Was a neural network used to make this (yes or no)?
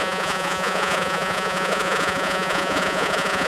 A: yes